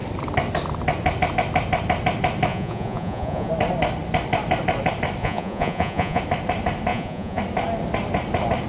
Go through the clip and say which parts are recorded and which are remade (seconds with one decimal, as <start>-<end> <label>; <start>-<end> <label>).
0.0-2.5 recorded; 2.5-3.5 remade; 3.5-5.2 recorded; 5.2-6.2 remade; 6.2-6.9 recorded; 6.9-7.4 remade; 7.4-8.7 recorded